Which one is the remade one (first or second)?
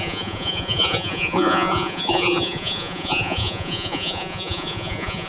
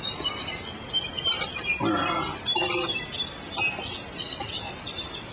first